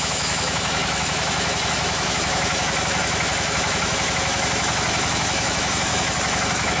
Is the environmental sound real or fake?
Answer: fake